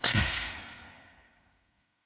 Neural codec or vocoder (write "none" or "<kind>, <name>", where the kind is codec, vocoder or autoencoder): codec, SNAC